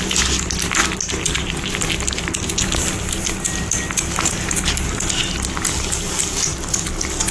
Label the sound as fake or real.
real